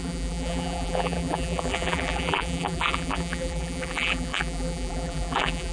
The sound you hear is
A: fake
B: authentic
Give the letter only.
A